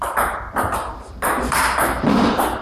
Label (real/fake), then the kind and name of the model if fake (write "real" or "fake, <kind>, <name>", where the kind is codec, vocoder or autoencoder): real